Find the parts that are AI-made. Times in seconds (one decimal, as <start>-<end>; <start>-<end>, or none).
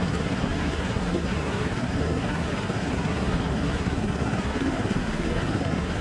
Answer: 0.0-6.0